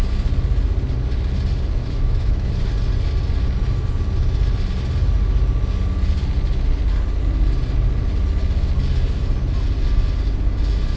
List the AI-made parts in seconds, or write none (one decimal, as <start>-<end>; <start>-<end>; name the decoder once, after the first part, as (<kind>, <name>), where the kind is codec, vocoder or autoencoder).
1.8-2.5 (autoencoder, DAC-VAE)